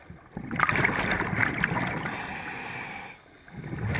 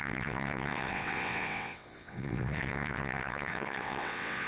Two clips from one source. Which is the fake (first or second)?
second